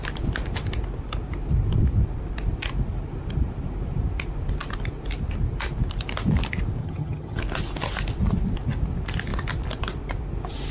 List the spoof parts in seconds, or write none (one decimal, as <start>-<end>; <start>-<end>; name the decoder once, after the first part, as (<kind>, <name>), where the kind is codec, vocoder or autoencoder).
6.8-7.4 (vocoder, HiFi-GAN)